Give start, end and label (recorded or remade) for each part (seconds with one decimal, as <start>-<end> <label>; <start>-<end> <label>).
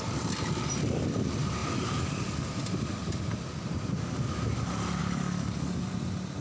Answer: 0.0-5.0 recorded; 5.0-5.9 remade; 5.9-6.4 recorded